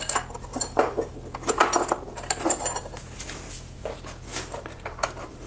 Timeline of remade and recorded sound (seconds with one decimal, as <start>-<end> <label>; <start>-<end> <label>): 0.0-0.5 recorded; 0.5-1.1 remade; 1.1-4.3 recorded; 4.3-5.5 remade